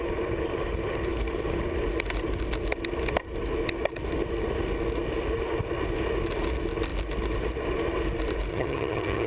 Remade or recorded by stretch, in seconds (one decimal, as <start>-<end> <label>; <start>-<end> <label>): 0.0-8.5 recorded; 8.5-9.3 remade